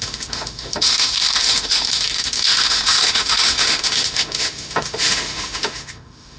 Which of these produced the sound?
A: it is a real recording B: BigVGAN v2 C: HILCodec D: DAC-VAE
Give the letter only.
D